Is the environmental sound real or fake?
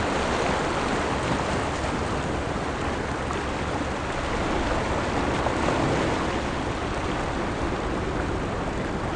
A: real